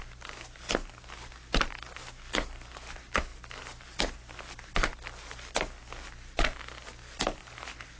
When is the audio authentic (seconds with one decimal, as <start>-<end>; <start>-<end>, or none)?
0.0-8.0